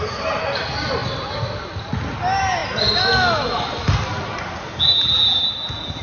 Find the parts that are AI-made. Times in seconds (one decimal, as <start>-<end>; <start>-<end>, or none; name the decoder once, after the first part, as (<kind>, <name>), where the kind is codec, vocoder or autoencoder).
none